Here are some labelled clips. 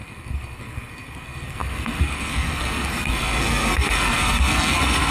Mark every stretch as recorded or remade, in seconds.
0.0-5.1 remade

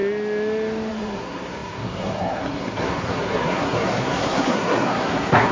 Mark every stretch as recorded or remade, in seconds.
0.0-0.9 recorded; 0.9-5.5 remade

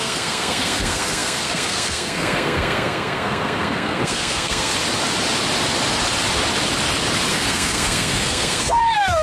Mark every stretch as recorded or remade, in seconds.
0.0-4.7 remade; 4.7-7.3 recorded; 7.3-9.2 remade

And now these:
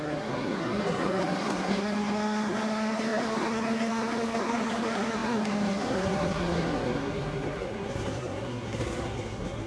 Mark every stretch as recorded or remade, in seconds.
0.0-9.7 remade